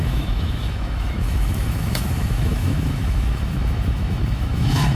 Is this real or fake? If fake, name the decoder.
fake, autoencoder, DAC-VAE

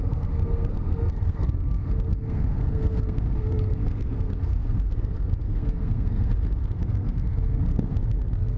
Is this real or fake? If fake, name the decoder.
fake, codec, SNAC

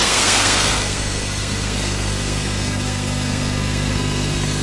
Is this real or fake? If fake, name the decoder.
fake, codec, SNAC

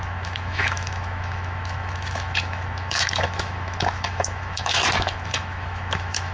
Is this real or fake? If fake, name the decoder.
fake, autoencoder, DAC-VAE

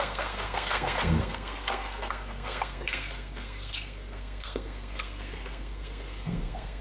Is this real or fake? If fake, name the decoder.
fake, codec, SNAC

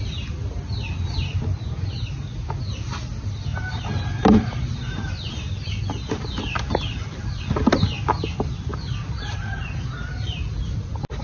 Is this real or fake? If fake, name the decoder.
real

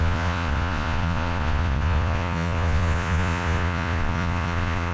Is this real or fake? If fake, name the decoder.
fake, vocoder, Vocos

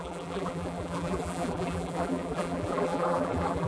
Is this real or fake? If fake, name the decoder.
fake, vocoder, BigVGAN v2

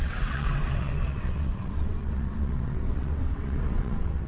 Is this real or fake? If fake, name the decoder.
fake, vocoder, WaveNeXt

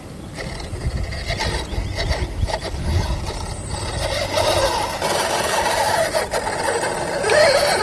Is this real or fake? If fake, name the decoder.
real